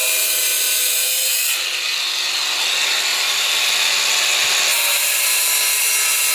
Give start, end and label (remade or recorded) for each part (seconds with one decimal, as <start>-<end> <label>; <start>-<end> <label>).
0.0-1.3 remade; 1.3-3.1 recorded; 3.1-3.7 remade; 3.7-4.7 recorded; 4.7-5.5 remade; 5.5-6.3 recorded